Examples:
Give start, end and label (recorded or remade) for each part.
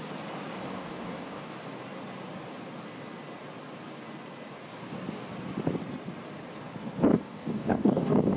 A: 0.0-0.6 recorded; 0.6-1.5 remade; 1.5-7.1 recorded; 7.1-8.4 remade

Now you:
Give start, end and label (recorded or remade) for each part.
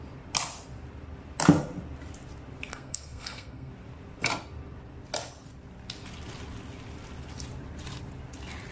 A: 0.0-2.7 recorded; 2.7-3.7 remade; 3.7-8.7 recorded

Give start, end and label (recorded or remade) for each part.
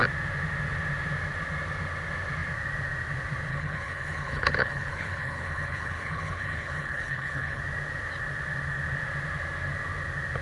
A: 0.0-3.5 recorded; 3.5-7.6 remade; 7.6-10.4 recorded